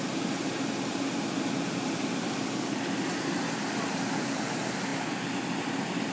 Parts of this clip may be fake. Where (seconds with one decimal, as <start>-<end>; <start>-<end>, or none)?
0.9-4.3